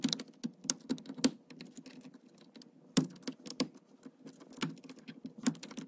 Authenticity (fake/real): real